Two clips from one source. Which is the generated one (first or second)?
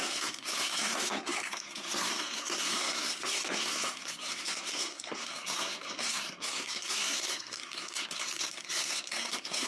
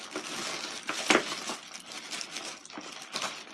first